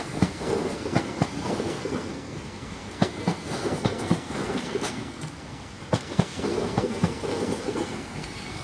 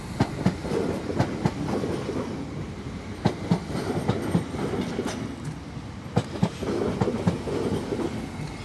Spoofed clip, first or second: first